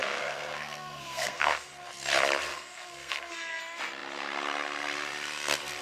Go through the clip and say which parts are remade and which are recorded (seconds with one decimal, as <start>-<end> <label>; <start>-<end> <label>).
0.0-1.7 remade; 1.7-2.5 recorded; 2.5-3.6 remade; 3.6-5.8 recorded